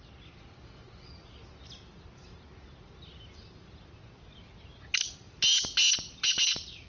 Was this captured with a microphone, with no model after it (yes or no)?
yes